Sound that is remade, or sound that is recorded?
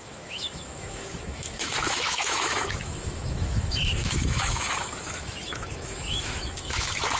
remade